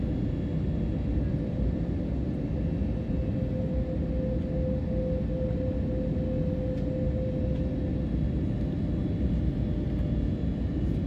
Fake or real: real